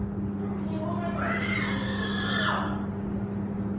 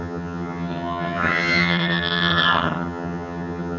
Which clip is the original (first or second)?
first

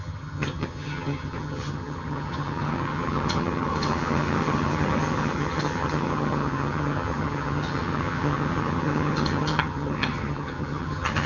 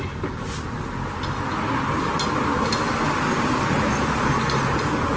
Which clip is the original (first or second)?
second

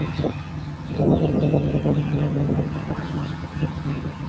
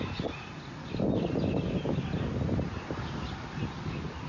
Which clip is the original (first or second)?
second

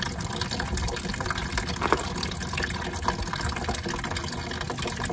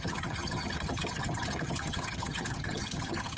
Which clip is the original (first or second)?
first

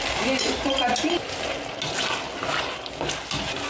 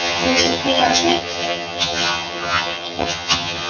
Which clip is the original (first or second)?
first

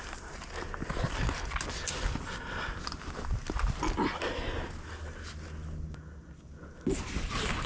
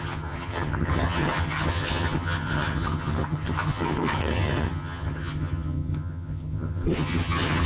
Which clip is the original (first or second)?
first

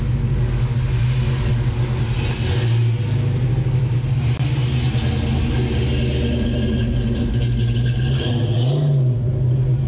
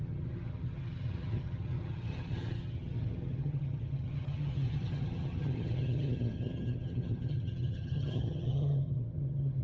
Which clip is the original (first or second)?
first